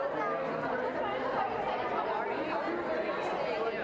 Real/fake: real